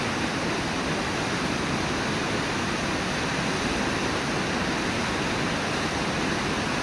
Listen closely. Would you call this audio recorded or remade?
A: recorded